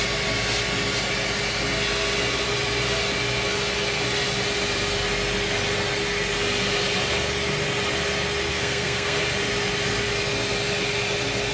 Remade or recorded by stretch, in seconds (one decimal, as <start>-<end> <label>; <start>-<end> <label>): 0.0-8.5 recorded; 8.5-9.2 remade; 9.2-11.5 recorded